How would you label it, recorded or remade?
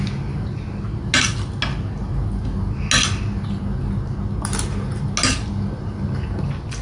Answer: recorded